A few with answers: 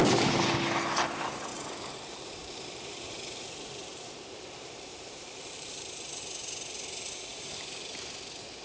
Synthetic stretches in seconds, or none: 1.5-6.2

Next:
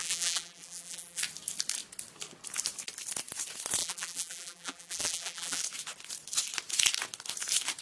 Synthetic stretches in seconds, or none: 0.0-1.2; 3.8-5.6

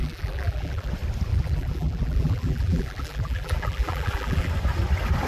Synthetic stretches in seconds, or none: 0.0-0.9; 1.3-4.5

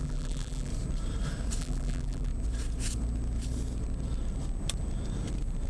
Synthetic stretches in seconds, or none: 0.0-0.7; 1.6-2.3

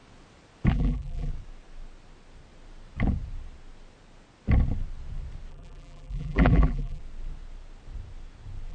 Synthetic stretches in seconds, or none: 0.7-1.3; 5.5-7.0

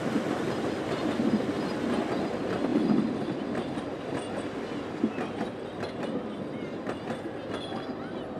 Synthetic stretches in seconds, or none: 2.7-3.8

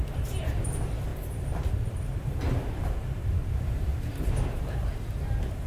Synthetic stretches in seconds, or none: 0.0-3.9; 4.5-5.7